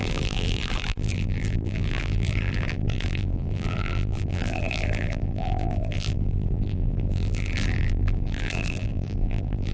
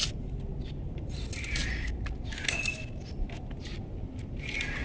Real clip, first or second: second